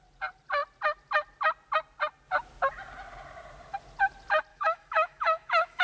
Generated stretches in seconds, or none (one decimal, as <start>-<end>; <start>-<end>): 4.5-5.8